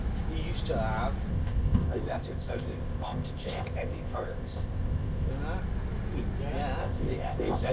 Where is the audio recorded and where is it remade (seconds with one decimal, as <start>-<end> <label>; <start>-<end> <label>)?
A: 0.0-1.3 recorded; 1.3-5.3 remade; 5.3-6.8 recorded; 6.8-7.7 remade